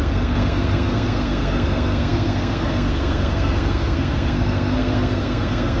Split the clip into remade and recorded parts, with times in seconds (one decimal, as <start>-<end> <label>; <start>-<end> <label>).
0.0-5.8 remade